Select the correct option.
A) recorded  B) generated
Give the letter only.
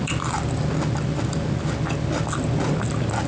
A